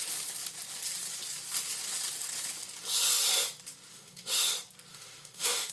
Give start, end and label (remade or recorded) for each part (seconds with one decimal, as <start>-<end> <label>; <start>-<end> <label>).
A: 0.0-3.9 recorded; 3.9-4.5 remade; 4.5-4.9 recorded; 4.9-5.7 remade